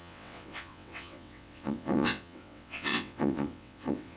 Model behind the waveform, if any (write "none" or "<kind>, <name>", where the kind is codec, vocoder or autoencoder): vocoder, WaveNeXt